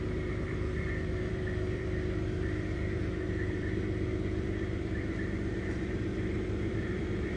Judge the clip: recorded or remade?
remade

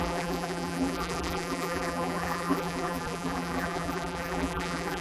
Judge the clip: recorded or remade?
remade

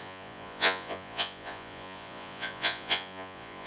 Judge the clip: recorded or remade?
remade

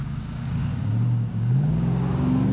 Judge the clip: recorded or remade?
remade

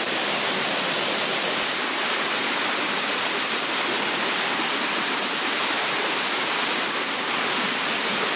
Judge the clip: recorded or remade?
recorded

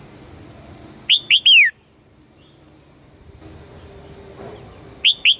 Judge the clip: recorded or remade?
recorded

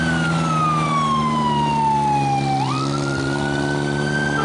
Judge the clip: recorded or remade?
recorded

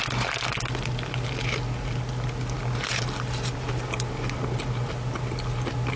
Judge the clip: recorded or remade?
recorded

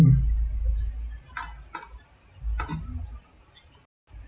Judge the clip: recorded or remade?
recorded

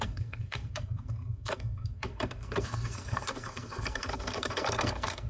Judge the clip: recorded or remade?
remade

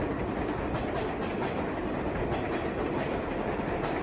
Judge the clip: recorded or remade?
recorded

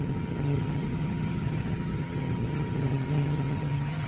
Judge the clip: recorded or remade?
remade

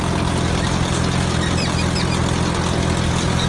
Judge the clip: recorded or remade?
recorded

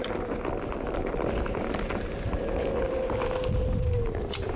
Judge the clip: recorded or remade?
recorded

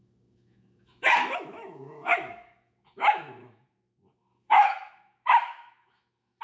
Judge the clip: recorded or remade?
remade